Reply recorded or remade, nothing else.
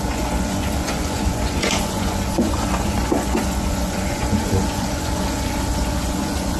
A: remade